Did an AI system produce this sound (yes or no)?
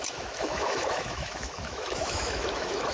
yes